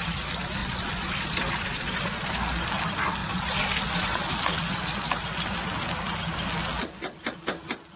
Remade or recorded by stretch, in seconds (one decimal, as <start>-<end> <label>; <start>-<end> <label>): 0.0-0.6 recorded; 0.6-2.3 remade; 2.3-3.2 recorded; 3.2-4.3 remade; 4.3-8.0 recorded